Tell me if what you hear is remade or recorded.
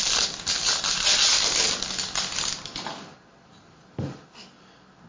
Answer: recorded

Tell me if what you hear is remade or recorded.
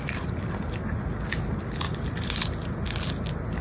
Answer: recorded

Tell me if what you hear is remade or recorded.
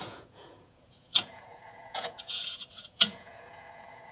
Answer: remade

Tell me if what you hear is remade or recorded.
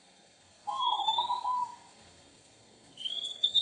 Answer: remade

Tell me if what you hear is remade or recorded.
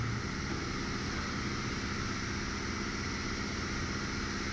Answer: recorded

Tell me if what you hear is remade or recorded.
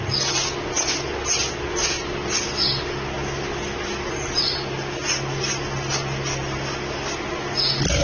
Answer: recorded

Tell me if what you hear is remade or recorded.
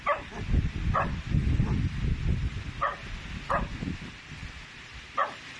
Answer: recorded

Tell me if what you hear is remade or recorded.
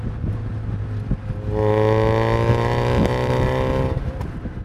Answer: recorded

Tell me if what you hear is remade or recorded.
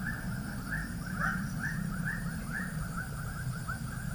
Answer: remade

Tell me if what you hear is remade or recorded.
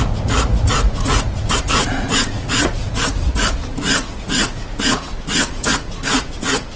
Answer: remade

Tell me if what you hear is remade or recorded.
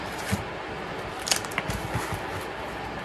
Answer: recorded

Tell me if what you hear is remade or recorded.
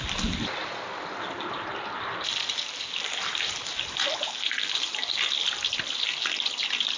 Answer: recorded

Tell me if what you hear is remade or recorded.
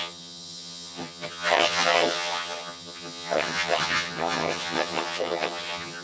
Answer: remade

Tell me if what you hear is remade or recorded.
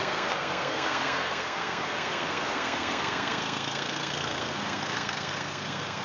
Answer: remade